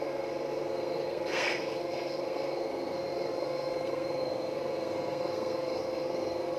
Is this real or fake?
fake